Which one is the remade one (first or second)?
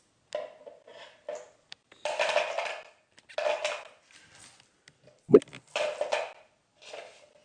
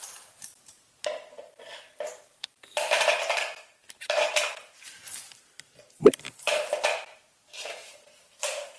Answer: second